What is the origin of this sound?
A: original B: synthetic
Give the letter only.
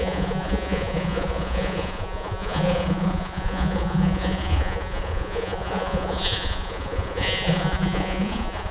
B